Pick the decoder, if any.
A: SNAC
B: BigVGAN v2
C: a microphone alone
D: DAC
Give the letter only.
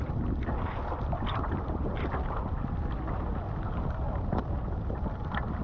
C